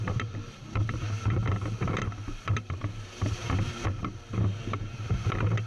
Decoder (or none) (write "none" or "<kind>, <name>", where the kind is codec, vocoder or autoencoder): vocoder, BigVGAN v2